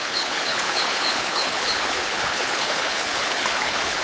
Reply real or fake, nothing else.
fake